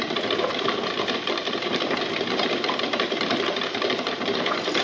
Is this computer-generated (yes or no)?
yes